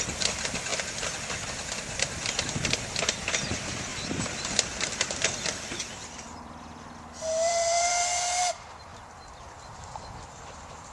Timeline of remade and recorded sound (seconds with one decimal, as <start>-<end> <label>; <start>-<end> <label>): 0.0-3.9 recorded; 3.9-7.9 remade; 7.9-8.9 recorded; 8.9-10.9 remade